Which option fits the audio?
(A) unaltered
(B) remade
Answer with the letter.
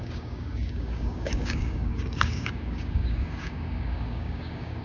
B